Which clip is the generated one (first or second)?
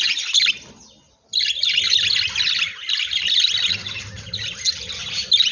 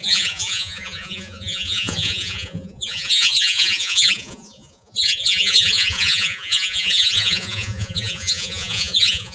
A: second